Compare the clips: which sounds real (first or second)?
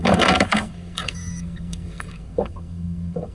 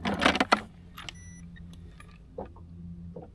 second